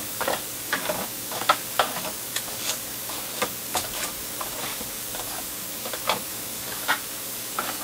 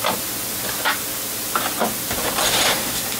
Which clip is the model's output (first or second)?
first